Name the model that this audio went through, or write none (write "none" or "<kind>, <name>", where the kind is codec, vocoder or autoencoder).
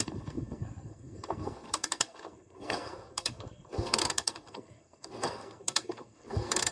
codec, SNAC